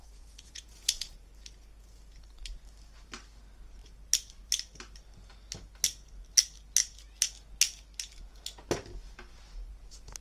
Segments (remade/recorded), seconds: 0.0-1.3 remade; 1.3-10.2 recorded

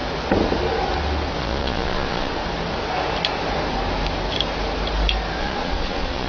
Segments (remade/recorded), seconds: 0.0-1.4 recorded; 1.4-2.4 remade; 2.4-5.4 recorded; 5.4-6.3 remade

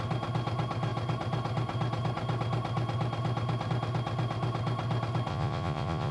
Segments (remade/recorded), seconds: 0.0-5.3 recorded; 5.3-6.1 remade

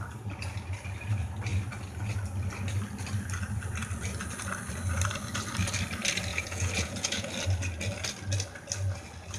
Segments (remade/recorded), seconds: 0.0-6.3 recorded; 6.3-7.3 remade; 7.3-9.4 recorded

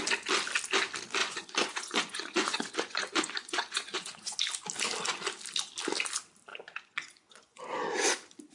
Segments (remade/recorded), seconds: 0.0-1.2 recorded; 1.2-4.4 remade; 4.4-6.5 recorded; 6.5-7.6 remade; 7.6-8.5 recorded

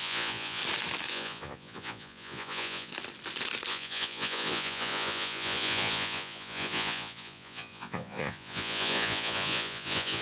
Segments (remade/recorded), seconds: 0.0-0.6 remade; 0.6-1.1 recorded; 1.1-2.9 remade; 2.9-3.7 recorded; 3.7-10.2 remade